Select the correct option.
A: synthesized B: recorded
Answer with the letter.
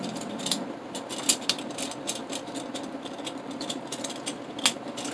B